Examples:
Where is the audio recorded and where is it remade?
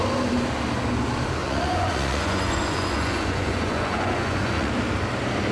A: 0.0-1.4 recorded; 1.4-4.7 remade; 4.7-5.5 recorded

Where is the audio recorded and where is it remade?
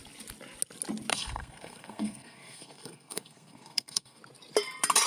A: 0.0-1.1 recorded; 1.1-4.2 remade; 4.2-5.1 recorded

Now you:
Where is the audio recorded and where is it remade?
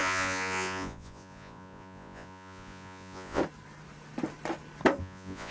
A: 0.0-3.4 remade; 3.4-5.0 recorded; 5.0-5.5 remade